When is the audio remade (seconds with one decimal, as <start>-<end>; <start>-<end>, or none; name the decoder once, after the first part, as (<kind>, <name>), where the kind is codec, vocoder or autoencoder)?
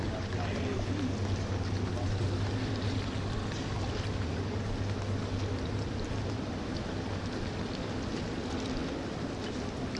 none